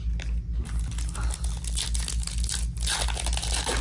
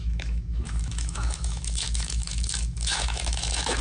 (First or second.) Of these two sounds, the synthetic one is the second